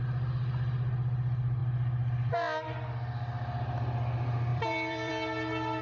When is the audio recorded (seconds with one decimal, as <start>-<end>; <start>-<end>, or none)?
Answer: 0.0-4.5; 5.1-5.8